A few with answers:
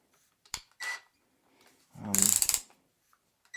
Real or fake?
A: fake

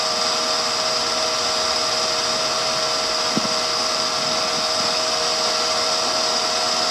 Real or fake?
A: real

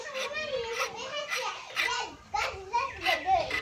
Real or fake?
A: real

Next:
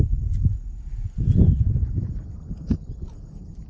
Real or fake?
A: real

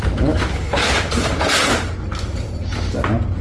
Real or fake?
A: real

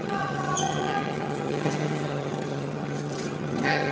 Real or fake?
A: fake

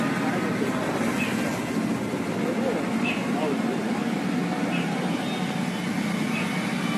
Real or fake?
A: real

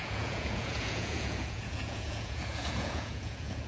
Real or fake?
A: fake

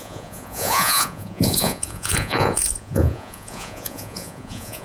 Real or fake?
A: fake